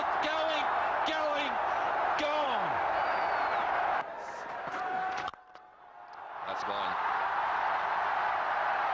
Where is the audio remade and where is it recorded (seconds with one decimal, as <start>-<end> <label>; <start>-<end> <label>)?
0.0-8.9 recorded